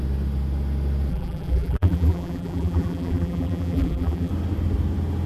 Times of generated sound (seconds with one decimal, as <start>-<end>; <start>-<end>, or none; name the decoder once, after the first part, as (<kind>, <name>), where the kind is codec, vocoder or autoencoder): 1.1-4.3 (vocoder, BigVGAN v2)